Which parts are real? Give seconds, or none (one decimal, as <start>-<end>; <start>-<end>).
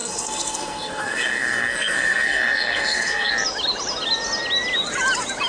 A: 3.3-5.5